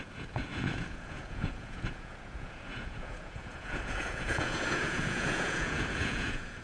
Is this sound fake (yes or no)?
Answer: yes